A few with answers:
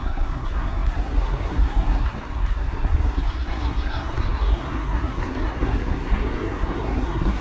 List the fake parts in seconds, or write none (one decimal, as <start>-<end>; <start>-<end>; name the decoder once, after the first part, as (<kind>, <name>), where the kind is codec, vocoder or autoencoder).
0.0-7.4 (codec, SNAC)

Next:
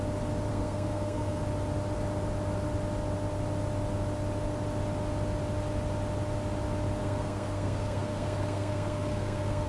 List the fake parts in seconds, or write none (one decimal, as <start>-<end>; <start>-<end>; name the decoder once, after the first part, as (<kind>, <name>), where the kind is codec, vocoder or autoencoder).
0.5-1.4 (codec, SNAC); 7.0-9.7

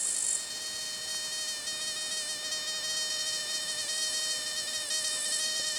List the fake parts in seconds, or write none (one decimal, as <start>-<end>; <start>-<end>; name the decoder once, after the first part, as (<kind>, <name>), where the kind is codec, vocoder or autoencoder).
0.0-1.1 (vocoder, Vocos); 3.1-5.8